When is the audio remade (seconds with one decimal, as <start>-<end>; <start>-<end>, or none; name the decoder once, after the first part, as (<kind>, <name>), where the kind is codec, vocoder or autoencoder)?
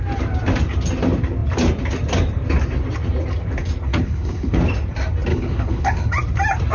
3.9-4.6 (codec, HILCodec); 5.3-6.1